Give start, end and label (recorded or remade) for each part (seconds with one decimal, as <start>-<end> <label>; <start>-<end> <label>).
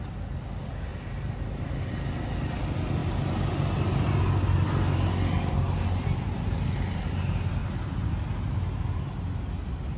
0.0-0.9 recorded; 0.9-1.8 remade; 1.8-7.6 recorded; 7.6-8.1 remade; 8.1-10.0 recorded